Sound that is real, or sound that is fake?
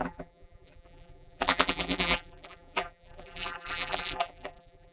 fake